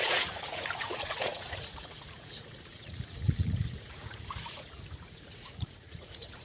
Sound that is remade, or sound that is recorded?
remade